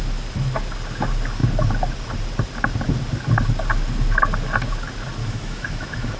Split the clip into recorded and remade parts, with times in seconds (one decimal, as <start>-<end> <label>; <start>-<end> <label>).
0.0-5.2 recorded; 5.2-6.2 remade